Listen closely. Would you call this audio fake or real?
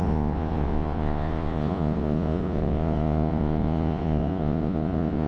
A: fake